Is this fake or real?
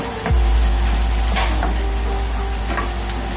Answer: real